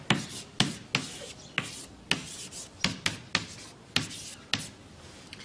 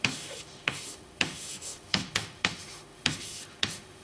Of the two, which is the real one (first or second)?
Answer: first